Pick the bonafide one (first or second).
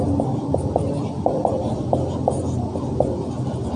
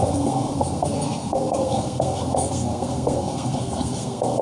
first